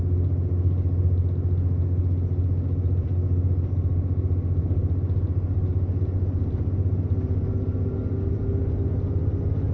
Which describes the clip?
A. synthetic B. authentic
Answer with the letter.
B